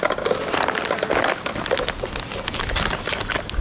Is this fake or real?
real